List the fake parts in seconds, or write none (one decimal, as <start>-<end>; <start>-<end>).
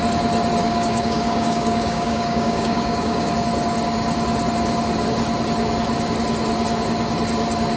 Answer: 0.6-3.3